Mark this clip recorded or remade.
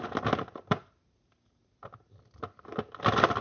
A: recorded